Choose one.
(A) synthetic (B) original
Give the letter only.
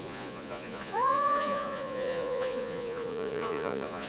A